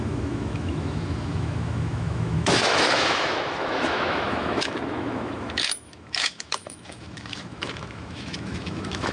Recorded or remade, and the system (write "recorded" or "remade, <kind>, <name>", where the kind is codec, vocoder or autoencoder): remade, autoencoder, DAC-VAE